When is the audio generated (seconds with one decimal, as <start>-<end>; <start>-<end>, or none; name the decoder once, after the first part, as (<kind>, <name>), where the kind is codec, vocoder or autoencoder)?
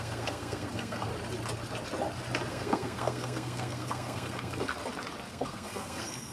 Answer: 0.0-1.1 (codec, SNAC); 2.5-4.7; 5.3-6.3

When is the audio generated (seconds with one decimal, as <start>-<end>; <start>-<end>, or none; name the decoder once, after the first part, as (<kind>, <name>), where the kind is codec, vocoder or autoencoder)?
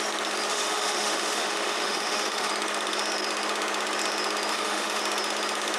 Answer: 0.5-2.5 (autoencoder, DAC-VAE); 4.5-5.0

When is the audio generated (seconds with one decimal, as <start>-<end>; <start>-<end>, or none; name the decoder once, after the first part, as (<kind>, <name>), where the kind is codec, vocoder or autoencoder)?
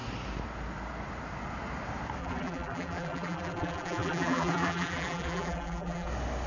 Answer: 2.2-6.1 (vocoder, BigVGAN v2)